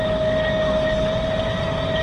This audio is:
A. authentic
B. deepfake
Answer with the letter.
A